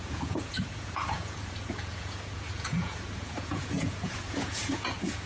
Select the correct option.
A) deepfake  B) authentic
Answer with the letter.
A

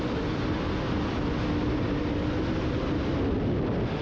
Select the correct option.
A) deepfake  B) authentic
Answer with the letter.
B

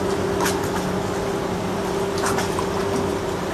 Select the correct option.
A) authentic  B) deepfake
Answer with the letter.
A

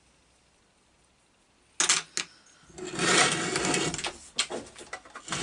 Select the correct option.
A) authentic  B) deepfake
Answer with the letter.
A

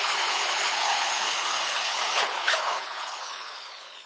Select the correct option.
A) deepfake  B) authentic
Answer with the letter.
A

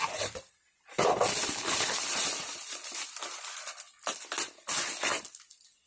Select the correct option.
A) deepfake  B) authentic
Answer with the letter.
B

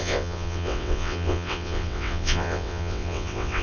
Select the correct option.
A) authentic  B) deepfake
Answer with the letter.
B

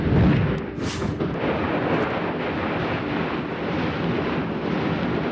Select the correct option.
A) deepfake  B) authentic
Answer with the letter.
B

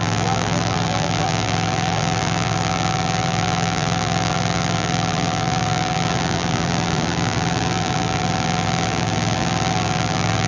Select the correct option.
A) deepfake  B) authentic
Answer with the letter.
A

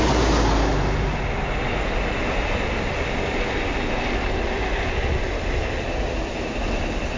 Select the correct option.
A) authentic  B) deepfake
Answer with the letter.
A